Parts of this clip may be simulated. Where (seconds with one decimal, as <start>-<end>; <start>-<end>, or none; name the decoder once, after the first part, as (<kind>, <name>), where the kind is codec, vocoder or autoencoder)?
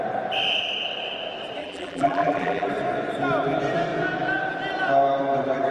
1.6-2.7 (vocoder, BigVGAN v2)